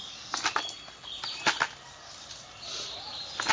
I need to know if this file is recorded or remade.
recorded